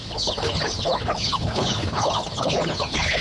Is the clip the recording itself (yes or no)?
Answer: no